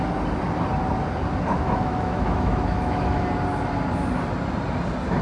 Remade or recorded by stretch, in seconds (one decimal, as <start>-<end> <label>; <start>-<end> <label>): 0.0-1.5 recorded; 1.5-3.2 remade; 3.2-5.2 recorded